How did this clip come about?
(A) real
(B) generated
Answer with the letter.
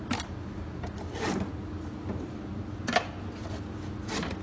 A